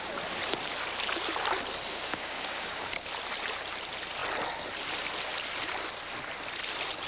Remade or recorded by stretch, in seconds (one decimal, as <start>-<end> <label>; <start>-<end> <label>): 0.0-1.9 recorded; 1.9-3.1 remade; 3.1-7.1 recorded